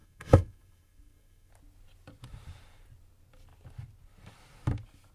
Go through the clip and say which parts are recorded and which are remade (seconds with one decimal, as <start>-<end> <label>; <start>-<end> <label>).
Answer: 0.0-1.5 remade; 1.5-5.1 recorded